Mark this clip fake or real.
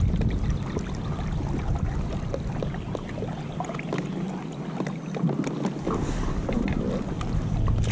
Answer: real